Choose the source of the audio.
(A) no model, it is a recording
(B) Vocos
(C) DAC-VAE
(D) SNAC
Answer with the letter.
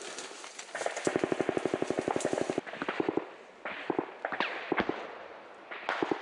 A